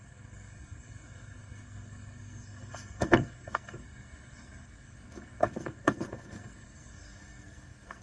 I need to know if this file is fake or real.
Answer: fake